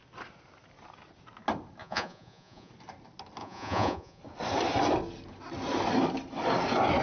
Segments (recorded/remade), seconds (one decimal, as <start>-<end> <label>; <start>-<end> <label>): 0.0-1.8 recorded; 1.8-2.7 remade; 2.7-3.4 recorded; 3.4-4.2 remade; 4.2-7.0 recorded